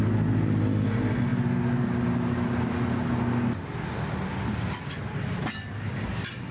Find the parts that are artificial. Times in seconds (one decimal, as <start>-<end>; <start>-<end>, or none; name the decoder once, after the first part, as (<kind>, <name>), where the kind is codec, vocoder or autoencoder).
none